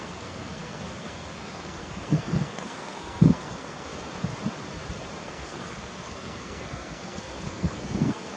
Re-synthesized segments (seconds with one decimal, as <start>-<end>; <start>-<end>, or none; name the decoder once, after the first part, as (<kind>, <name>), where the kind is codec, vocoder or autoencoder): 0.0-3.9 (codec, SNAC); 5.2-8.4